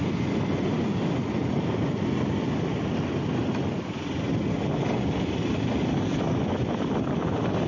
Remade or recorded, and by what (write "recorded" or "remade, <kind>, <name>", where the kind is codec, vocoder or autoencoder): recorded